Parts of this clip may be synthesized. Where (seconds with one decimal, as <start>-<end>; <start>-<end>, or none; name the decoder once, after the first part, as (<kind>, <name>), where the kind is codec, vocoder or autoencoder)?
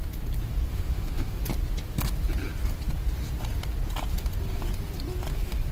0.7-1.4 (autoencoder, DAC-VAE)